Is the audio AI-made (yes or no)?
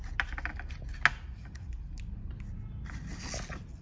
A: no